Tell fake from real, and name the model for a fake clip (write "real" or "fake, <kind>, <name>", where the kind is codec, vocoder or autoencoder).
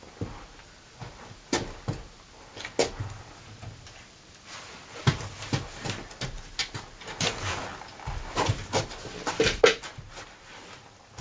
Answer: real